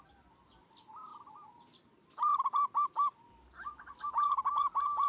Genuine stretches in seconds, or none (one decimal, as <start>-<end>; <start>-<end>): 0.0-5.1